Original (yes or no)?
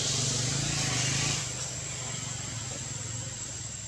yes